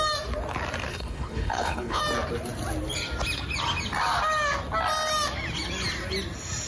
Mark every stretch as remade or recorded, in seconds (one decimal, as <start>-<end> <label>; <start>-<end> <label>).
0.0-0.9 recorded; 0.9-2.0 remade; 2.0-6.7 recorded